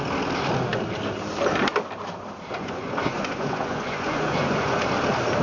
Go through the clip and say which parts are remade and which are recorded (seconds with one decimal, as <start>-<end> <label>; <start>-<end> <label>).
0.0-2.6 recorded; 2.6-4.8 remade; 4.8-5.4 recorded